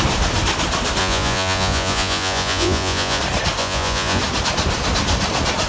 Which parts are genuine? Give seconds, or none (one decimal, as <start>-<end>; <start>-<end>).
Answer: 0.0-1.0; 3.2-3.6; 4.2-5.7